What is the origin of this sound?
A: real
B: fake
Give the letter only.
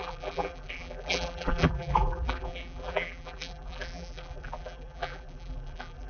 B